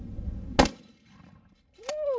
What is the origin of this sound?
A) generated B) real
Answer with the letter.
B